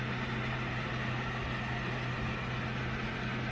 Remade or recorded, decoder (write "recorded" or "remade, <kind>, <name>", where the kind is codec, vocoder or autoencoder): recorded